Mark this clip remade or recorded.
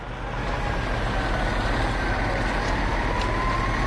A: recorded